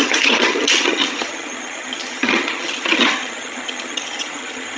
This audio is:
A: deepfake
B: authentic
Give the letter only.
A